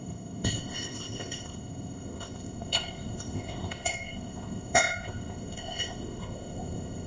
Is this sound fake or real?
fake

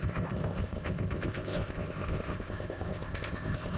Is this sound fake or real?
fake